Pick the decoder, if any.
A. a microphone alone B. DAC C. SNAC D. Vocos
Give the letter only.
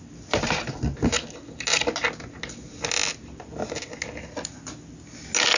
A